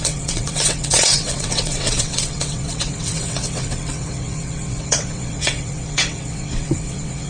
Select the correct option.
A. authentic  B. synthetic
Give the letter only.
B